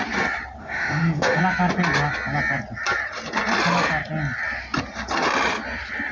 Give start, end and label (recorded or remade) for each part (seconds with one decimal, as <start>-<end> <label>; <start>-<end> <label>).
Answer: 0.0-0.6 recorded; 0.6-1.4 remade; 1.4-6.1 recorded